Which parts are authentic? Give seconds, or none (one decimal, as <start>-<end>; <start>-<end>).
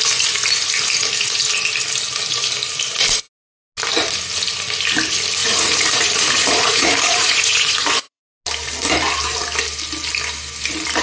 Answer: 0.0-5.4; 8.2-11.0